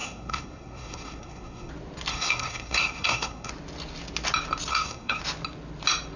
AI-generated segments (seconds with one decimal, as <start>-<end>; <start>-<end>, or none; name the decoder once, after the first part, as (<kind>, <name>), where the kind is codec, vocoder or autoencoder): 0.0-1.7 (codec, SNAC); 2.1-3.5; 4.7-5.2